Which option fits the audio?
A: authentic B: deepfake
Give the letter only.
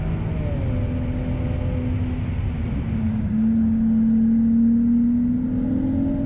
A